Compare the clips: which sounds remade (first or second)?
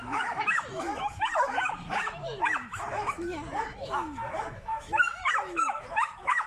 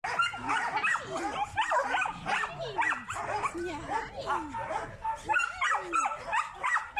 first